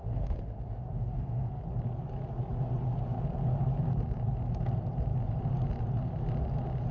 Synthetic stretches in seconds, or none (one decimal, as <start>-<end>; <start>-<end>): 0.0-1.6